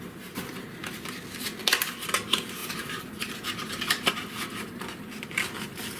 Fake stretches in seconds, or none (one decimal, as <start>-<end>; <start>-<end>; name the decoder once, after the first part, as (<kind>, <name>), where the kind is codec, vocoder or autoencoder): 2.6-3.4 (vocoder, BigVGAN v2)